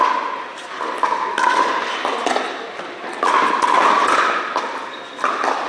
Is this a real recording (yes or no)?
yes